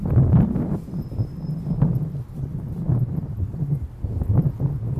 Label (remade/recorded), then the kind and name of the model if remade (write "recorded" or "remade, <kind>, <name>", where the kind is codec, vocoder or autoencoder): recorded